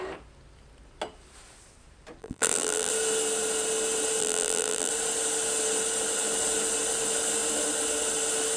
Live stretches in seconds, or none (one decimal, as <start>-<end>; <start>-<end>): 0.0-2.2; 2.9-4.2; 4.9-8.6